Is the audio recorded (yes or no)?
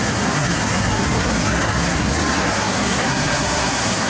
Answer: no